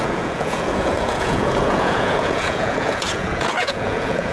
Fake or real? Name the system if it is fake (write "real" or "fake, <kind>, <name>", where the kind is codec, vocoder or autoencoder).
fake, vocoder, Vocos